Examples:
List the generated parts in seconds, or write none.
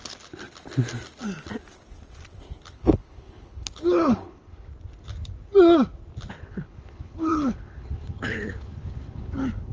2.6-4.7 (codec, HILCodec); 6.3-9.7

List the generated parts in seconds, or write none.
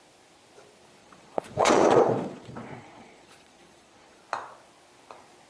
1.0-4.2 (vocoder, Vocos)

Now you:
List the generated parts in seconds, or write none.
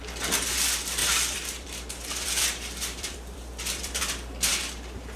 1.0-4.0 (vocoder, BigVGAN v2)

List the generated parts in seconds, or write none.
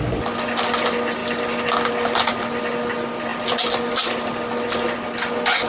none